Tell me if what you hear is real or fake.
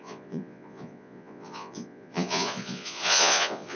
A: fake